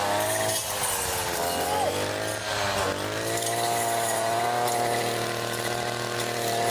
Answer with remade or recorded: recorded